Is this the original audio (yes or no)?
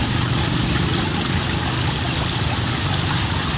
yes